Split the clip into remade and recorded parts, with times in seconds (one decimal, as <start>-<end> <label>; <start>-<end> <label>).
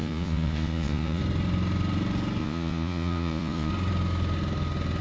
0.0-1.2 remade; 1.2-2.4 recorded; 2.4-3.7 remade; 3.7-5.0 recorded